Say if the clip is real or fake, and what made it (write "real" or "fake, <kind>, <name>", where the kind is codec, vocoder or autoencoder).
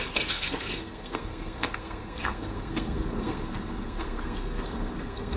fake, codec, SNAC